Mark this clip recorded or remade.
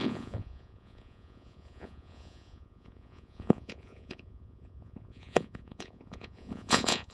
remade